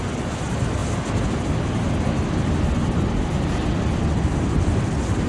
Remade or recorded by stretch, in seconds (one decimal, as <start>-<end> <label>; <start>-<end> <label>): 0.0-5.3 recorded